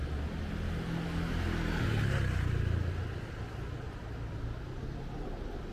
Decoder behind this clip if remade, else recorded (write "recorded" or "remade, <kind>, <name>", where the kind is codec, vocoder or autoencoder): recorded